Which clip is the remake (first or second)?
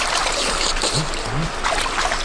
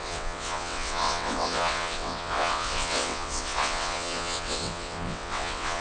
second